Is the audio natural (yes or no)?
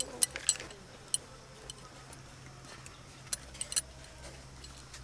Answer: yes